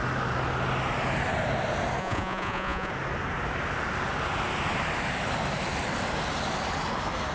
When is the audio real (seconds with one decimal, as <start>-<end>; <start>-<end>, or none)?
0.0-2.0; 2.9-7.3